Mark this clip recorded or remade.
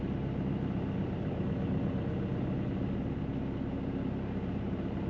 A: recorded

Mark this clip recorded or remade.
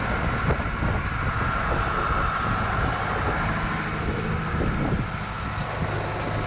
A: recorded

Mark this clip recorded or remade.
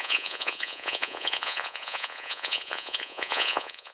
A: remade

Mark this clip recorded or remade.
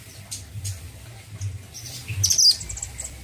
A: recorded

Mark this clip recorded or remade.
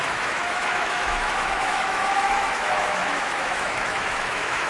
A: remade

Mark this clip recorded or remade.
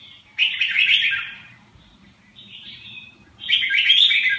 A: remade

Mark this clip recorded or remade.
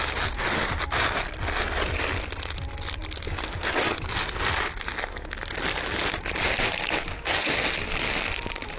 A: recorded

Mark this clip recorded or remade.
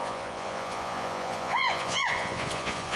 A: remade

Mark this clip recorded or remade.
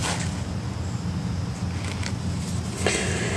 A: recorded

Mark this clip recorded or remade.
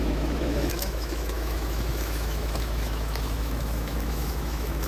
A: remade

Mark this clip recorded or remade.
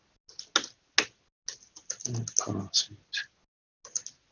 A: recorded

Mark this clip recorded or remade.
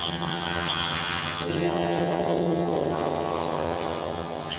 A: remade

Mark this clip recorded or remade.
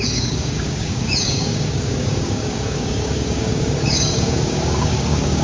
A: remade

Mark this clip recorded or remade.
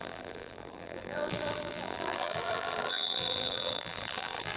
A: remade